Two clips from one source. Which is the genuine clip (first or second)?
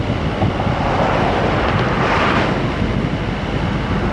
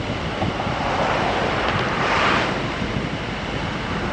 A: first